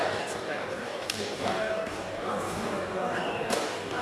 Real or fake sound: fake